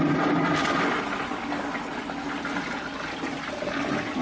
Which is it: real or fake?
real